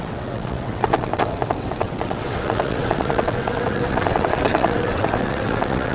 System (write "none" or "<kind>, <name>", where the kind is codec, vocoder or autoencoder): vocoder, WaveNeXt